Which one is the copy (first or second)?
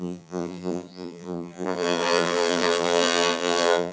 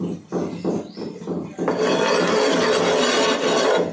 first